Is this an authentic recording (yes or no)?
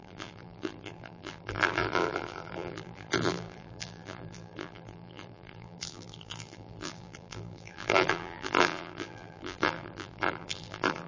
no